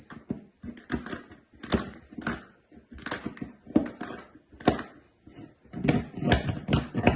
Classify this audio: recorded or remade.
recorded